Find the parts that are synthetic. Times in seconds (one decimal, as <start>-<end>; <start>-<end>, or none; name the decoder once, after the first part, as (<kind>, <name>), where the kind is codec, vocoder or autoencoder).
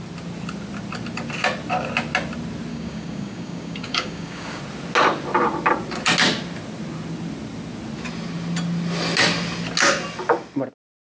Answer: 2.7-4.6 (codec, DAC)